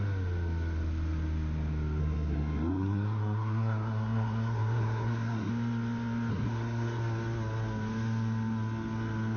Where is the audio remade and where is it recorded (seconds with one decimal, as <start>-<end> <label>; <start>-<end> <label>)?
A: 0.0-2.0 recorded; 2.0-5.5 remade; 5.5-6.3 recorded; 6.3-7.0 remade; 7.0-9.4 recorded